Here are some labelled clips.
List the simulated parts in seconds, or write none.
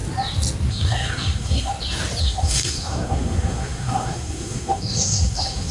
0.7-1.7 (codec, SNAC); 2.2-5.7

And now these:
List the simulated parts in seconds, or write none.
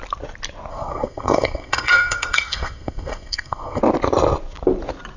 0.7-3.8 (codec, SNAC)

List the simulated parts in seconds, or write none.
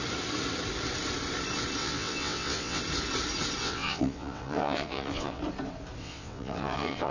1.8-2.8 (vocoder, WaveNeXt); 3.6-5.4; 6.0-7.1